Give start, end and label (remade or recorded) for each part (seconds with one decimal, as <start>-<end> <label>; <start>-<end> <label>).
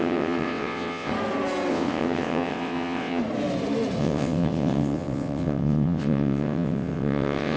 0.0-1.1 remade; 1.1-1.7 recorded; 1.7-3.2 remade; 3.2-4.0 recorded; 4.0-7.6 remade